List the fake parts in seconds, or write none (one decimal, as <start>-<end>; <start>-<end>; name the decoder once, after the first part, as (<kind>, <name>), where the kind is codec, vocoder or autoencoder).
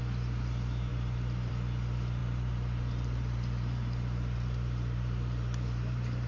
0.9-1.5 (vocoder, BigVGAN v2); 2.2-6.3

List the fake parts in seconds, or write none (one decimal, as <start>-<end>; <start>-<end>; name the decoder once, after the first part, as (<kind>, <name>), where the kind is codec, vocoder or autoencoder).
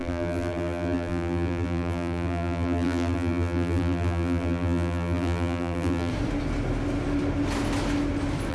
0.0-6.1 (vocoder, BigVGAN v2)